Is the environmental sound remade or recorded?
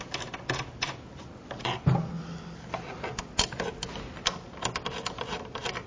recorded